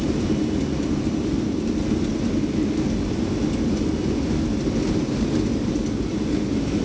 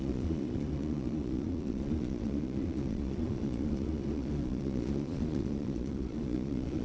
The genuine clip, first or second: first